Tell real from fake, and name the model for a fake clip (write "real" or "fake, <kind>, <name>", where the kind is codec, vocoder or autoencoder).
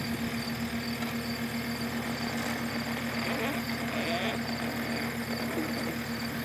real